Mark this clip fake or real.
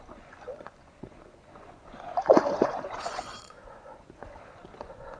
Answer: fake